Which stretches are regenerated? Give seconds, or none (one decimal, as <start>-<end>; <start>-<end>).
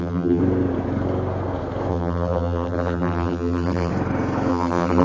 0.0-0.4; 1.9-3.9; 4.5-5.0